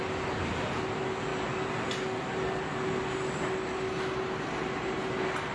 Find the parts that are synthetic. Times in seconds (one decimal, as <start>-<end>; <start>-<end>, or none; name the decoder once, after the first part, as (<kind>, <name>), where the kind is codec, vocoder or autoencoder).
none